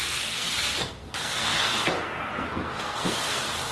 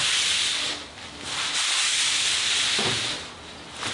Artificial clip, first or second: first